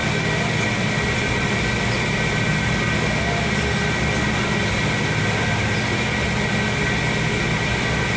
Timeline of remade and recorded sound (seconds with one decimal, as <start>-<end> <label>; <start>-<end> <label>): 0.0-8.2 recorded